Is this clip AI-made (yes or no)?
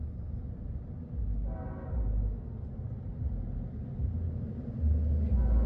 no